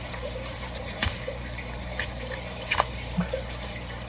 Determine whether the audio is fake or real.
fake